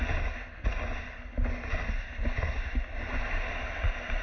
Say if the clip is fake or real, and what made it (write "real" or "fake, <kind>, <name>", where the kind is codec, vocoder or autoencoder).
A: real